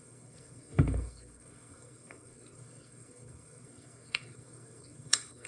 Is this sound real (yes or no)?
no